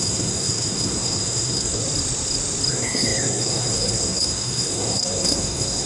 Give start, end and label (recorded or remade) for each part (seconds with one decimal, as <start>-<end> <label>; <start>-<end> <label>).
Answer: 0.0-1.8 remade; 1.8-2.7 recorded; 2.7-5.9 remade